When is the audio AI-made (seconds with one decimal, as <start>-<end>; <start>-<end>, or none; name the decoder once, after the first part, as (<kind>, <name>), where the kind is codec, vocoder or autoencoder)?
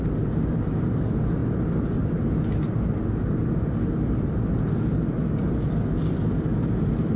6.5-7.2 (vocoder, BigVGAN v2)